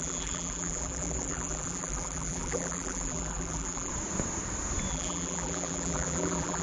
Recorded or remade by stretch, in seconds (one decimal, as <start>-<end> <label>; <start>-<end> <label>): 0.0-3.9 remade; 3.9-4.9 recorded; 4.9-6.6 remade